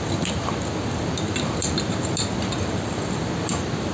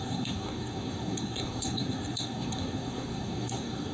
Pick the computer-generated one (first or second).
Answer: second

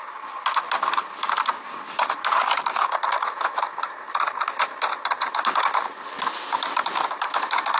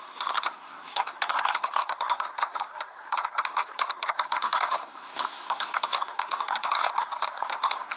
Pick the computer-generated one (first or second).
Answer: second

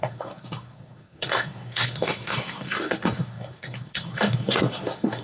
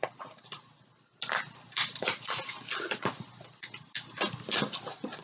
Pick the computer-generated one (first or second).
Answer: first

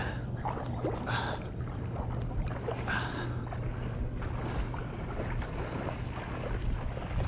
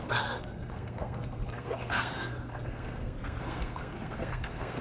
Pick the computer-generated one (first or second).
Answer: second